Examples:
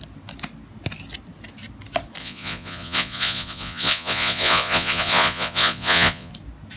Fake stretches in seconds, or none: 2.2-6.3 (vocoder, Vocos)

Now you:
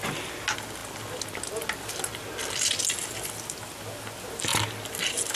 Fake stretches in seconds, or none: 4.5-5.4 (vocoder, BigVGAN v2)

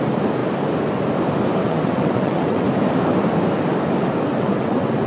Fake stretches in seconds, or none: 1.6-2.7 (vocoder, WaveNeXt); 4.3-5.1